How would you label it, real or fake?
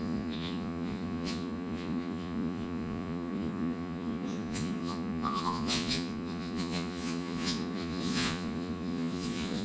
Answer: fake